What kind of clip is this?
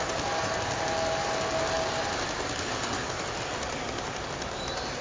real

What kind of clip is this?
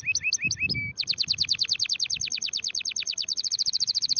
real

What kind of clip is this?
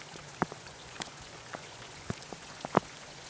fake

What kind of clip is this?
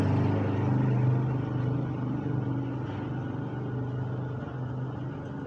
real